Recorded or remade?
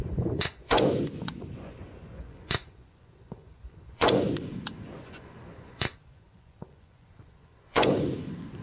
remade